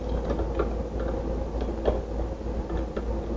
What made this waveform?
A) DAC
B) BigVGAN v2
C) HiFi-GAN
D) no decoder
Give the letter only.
D